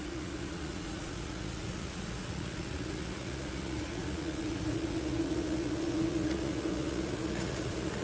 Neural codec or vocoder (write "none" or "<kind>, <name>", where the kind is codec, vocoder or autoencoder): vocoder, Vocos